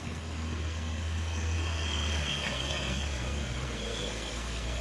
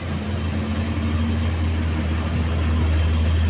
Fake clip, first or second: first